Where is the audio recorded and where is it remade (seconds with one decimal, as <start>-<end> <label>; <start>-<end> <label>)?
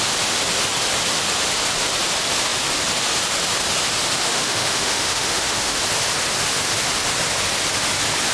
0.0-4.2 recorded; 4.2-5.8 remade; 5.8-8.3 recorded